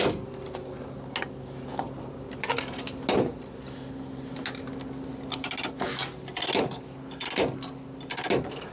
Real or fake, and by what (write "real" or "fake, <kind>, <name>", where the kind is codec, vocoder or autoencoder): real